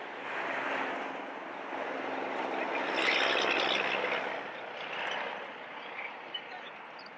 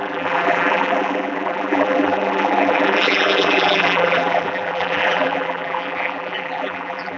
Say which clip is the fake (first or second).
second